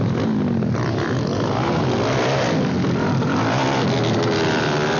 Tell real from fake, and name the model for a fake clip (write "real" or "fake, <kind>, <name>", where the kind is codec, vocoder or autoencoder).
real